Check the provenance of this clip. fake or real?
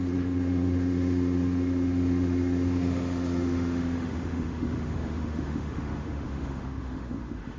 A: fake